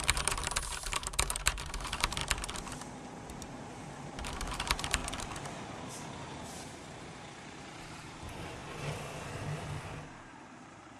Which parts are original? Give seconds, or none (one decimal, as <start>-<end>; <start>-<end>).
2.2-4.0; 5.0-6.5; 8.6-10.6